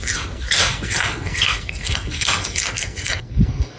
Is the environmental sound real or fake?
fake